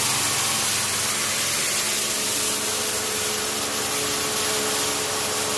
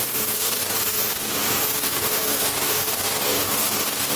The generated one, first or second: second